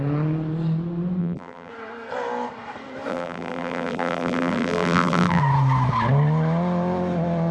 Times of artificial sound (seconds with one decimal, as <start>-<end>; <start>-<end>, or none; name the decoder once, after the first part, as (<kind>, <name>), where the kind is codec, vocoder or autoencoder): 1.2-1.7 (vocoder, BigVGAN v2); 3.1-5.4